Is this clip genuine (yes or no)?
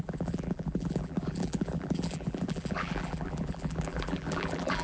no